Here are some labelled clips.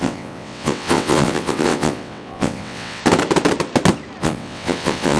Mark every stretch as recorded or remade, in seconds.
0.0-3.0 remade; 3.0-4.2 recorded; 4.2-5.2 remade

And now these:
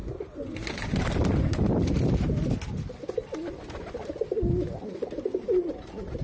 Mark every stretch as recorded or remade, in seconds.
0.0-6.2 recorded

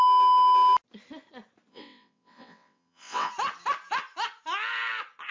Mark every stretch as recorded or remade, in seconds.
0.0-1.7 recorded; 1.7-3.3 remade; 3.3-5.3 recorded

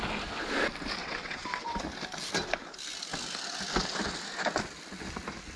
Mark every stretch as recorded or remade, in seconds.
0.0-1.0 recorded; 1.0-1.8 remade; 1.8-5.6 recorded

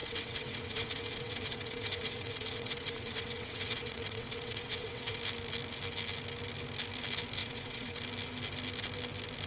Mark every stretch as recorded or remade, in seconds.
0.0-5.2 remade; 5.2-7.4 recorded; 7.4-8.0 remade; 8.0-9.5 recorded

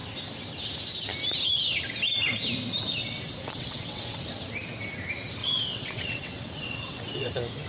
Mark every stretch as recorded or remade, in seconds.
0.0-3.0 recorded; 3.0-4.2 remade; 4.2-5.4 recorded; 5.4-7.3 remade; 7.3-7.7 recorded

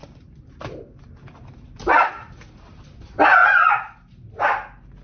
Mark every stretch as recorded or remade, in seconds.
0.0-5.0 recorded